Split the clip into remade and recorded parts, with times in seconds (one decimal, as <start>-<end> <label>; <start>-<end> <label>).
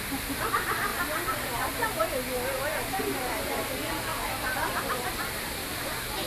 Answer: 0.0-6.3 recorded